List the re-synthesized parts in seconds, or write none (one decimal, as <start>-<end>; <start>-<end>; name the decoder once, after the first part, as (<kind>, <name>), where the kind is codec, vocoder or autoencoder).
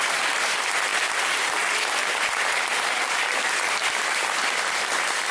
none